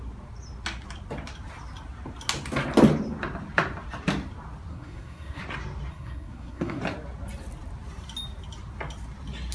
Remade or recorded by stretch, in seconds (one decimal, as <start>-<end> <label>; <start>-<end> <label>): 0.0-4.7 recorded; 4.7-5.4 remade; 5.4-5.9 recorded; 5.9-6.8 remade; 6.8-9.5 recorded